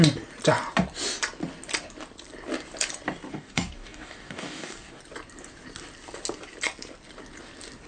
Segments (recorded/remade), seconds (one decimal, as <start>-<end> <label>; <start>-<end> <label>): 0.0-3.3 recorded; 3.3-5.0 remade; 5.0-7.9 recorded